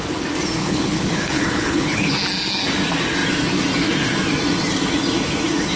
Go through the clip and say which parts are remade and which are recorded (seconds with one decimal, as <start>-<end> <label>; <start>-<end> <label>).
0.0-0.6 recorded; 0.6-2.2 remade; 2.2-5.8 recorded